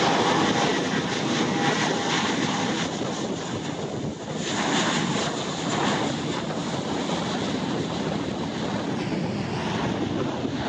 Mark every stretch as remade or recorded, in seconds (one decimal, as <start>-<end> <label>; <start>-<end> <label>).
0.0-10.7 recorded